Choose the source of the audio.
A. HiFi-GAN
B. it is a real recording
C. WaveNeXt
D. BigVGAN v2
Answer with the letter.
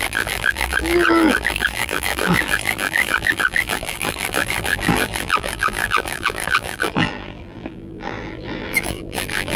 D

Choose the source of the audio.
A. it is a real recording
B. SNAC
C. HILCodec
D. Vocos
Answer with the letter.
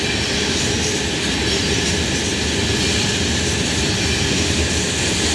A